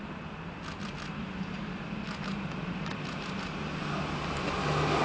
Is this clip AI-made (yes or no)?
no